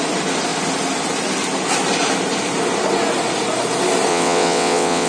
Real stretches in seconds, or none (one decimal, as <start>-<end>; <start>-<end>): 0.0-4.1

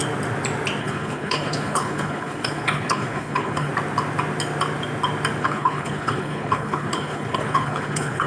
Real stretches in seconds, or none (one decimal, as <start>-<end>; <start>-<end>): 0.0-0.8; 3.7-5.4

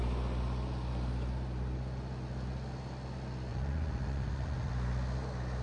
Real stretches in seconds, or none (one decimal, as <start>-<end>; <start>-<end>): 0.0-3.5; 4.7-5.6

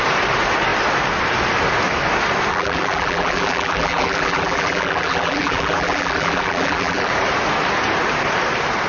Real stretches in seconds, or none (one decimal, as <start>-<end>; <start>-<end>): 0.0-2.5; 7.1-8.9

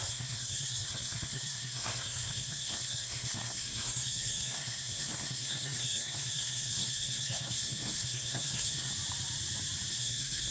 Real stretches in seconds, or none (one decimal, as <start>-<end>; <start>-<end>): 8.9-9.9

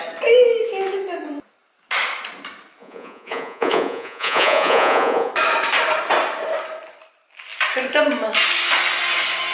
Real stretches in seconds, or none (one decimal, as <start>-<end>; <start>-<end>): 0.0-2.8; 5.3-9.5

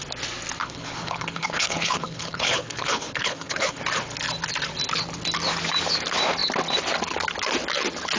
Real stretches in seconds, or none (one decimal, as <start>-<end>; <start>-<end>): 0.0-0.6; 3.8-8.2

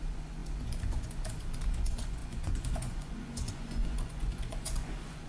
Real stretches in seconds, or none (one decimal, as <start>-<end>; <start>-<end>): none